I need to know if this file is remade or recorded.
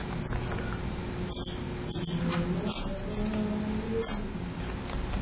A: recorded